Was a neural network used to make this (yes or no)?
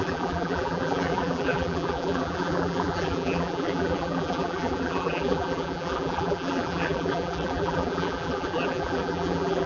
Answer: yes